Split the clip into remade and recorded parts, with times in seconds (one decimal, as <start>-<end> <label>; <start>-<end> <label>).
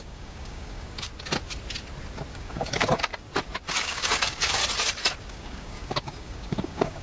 0.0-1.1 remade; 1.1-2.3 recorded; 2.3-3.1 remade; 3.1-3.8 recorded; 3.8-4.6 remade; 4.6-5.2 recorded; 5.2-7.0 remade